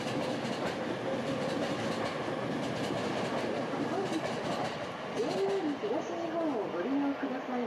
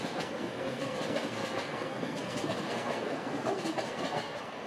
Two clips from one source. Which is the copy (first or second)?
second